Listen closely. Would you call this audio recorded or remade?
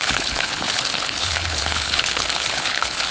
remade